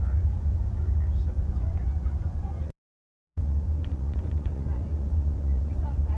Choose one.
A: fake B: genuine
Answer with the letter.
A